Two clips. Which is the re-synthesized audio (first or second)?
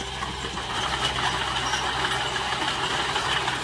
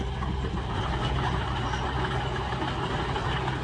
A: second